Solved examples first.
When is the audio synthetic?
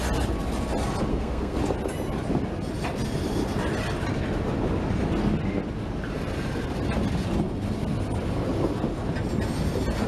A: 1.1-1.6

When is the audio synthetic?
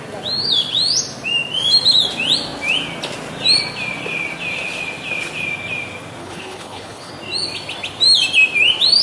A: 6.2-7.1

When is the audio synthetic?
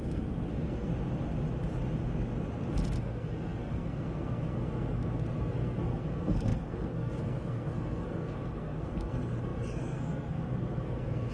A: 0.0-0.9; 3.0-11.3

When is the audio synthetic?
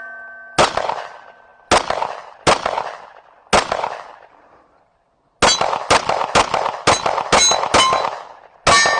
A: none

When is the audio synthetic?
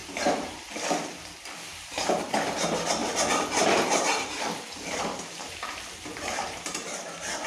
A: 0.0-0.6; 1.7-2.2; 3.0-7.5